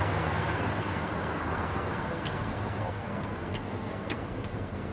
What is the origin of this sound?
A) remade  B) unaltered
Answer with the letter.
A